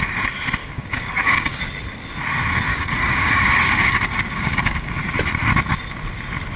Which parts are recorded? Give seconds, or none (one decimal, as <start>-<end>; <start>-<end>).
0.0-0.6; 1.6-2.7; 4.9-6.6